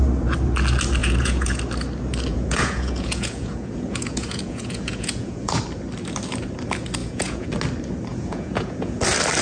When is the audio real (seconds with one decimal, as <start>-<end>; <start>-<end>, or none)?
0.0-1.0; 1.6-2.3; 5.6-7.0; 7.5-8.1; 9.0-9.4